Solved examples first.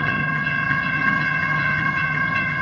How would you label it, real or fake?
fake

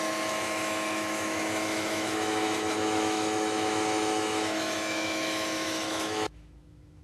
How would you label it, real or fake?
fake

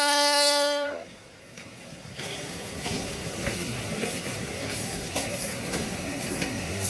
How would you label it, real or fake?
fake